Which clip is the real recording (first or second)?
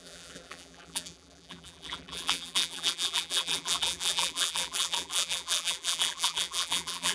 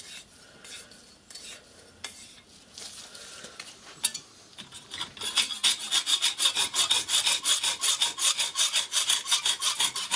second